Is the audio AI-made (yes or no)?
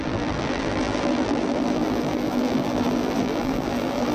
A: yes